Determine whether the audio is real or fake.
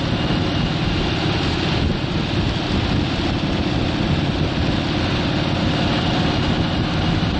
real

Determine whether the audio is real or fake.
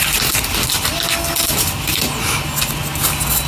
real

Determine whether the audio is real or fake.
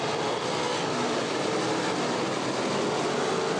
real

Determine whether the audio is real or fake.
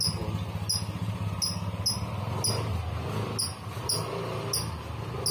real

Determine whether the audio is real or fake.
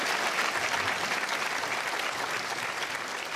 real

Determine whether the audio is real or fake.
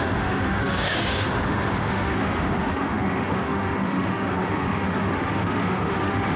fake